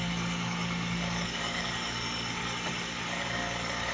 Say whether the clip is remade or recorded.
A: remade